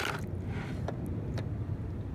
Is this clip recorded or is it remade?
recorded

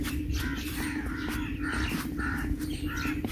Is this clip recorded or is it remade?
recorded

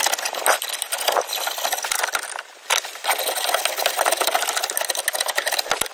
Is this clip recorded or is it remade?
recorded